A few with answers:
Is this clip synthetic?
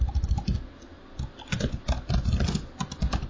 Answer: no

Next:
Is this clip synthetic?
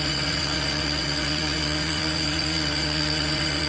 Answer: yes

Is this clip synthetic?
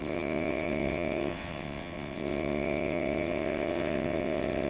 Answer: yes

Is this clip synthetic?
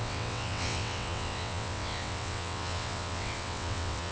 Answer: yes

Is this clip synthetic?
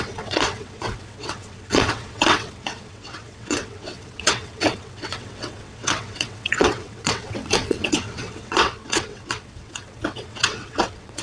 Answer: yes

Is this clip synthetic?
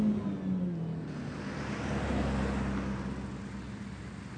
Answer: no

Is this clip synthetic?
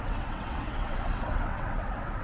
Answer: yes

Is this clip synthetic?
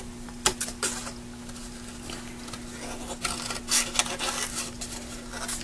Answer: no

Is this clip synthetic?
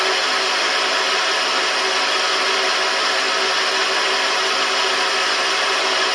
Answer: no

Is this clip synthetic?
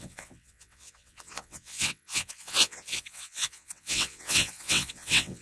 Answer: yes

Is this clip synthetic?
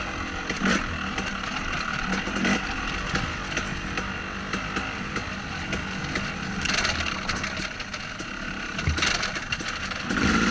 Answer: no